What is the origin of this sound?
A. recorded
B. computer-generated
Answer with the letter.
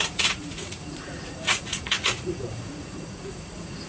B